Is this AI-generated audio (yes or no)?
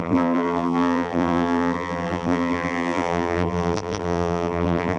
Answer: yes